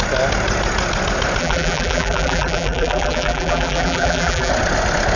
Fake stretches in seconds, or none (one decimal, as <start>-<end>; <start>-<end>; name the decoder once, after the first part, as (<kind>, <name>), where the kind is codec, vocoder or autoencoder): 1.4-4.5 (vocoder, BigVGAN v2)